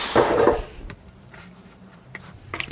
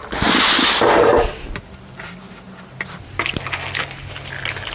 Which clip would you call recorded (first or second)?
second